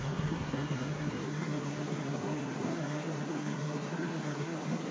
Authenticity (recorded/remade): remade